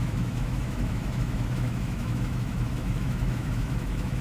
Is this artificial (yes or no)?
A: yes